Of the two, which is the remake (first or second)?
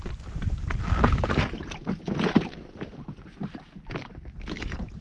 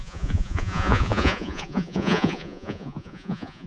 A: second